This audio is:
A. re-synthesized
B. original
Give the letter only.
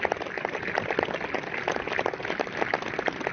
B